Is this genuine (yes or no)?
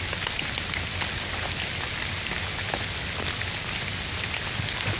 yes